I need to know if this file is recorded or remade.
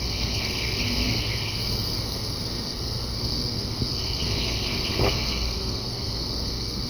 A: remade